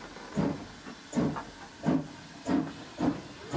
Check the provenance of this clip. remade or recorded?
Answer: recorded